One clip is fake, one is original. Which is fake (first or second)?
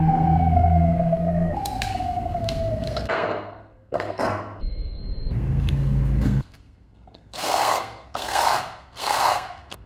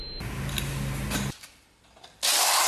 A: first